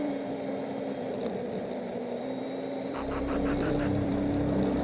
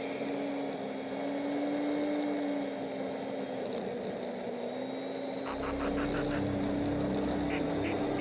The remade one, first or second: first